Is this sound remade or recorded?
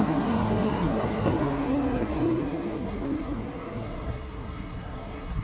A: remade